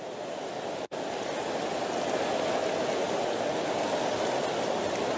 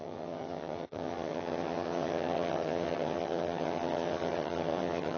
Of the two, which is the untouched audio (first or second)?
first